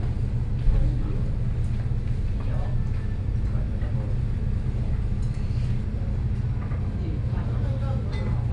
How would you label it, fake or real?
real